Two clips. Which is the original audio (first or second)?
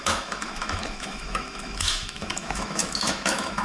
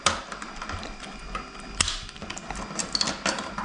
second